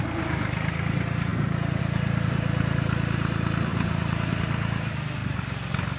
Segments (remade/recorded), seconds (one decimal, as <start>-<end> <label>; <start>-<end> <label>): 0.0-3.7 recorded; 3.7-4.3 remade; 4.3-6.0 recorded